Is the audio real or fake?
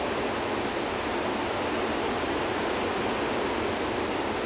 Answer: real